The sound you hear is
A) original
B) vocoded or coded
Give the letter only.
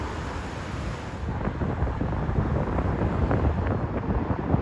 A